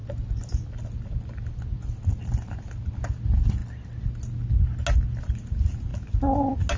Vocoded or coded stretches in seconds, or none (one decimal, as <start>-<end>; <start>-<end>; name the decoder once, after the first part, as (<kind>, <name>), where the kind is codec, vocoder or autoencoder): none